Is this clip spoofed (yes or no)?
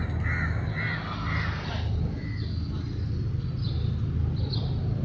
no